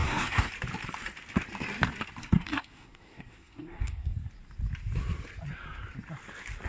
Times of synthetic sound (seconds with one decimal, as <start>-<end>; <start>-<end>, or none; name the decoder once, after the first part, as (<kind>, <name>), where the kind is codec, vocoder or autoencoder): 0.0-0.5 (codec, SNAC); 2.2-4.3